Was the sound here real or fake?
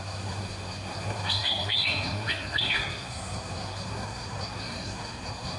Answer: fake